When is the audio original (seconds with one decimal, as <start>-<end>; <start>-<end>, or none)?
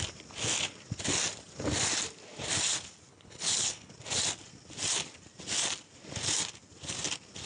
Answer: 0.0-3.1; 3.9-7.5